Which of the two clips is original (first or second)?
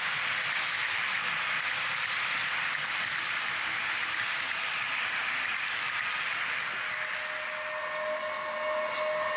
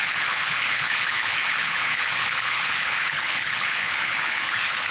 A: first